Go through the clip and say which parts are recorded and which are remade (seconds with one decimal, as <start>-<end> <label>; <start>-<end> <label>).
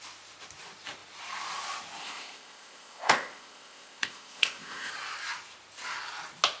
0.0-2.0 recorded; 2.0-4.9 remade; 4.9-6.6 recorded